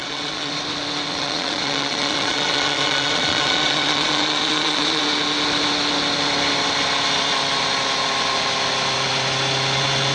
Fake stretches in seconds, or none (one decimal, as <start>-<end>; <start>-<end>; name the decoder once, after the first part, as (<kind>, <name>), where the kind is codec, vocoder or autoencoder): 0.0-0.5 (vocoder, Vocos); 1.1-5.0